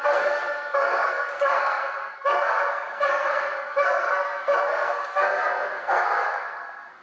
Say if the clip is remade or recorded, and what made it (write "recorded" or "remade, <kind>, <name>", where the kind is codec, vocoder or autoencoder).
remade, codec, SNAC